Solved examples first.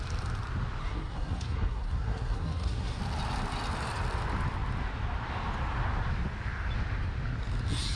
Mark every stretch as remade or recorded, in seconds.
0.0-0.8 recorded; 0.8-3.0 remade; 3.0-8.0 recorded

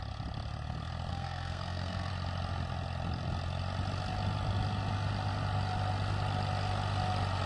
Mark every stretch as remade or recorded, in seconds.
0.0-1.1 recorded; 1.1-2.1 remade; 2.1-7.5 recorded

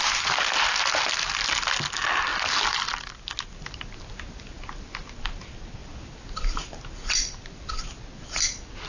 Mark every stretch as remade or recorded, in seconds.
0.0-8.9 recorded

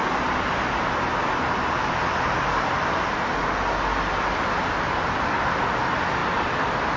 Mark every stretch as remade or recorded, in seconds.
0.0-7.0 recorded

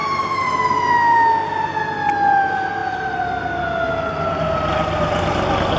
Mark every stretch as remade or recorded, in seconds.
0.0-5.8 recorded